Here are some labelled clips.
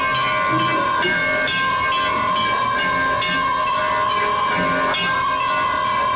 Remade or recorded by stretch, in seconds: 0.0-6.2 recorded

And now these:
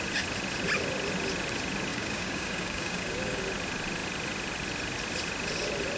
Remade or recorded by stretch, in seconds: 0.0-1.9 recorded; 1.9-3.4 remade; 3.4-6.0 recorded

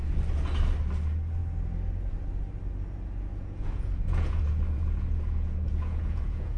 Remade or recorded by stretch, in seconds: 0.0-3.3 recorded; 3.3-6.6 remade

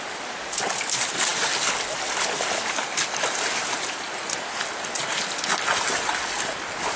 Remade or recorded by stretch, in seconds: 0.0-7.0 recorded

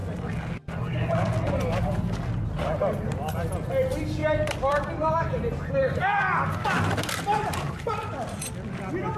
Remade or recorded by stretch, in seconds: 0.0-4.2 recorded; 4.2-8.4 remade; 8.4-9.2 recorded

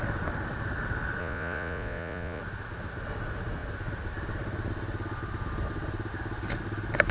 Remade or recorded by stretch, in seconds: 0.0-1.2 recorded; 1.2-2.4 remade; 2.4-7.1 recorded